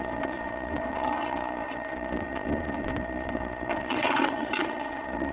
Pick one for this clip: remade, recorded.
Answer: remade